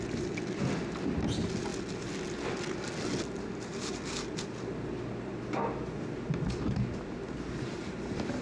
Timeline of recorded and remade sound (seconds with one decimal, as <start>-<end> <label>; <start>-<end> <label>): 0.0-8.4 recorded